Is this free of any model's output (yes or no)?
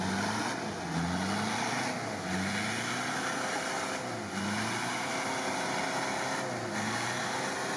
yes